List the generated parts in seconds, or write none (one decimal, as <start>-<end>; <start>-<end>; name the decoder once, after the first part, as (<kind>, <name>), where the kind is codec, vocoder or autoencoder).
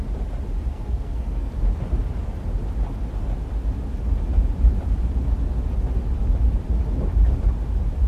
0.7-1.5 (codec, SNAC)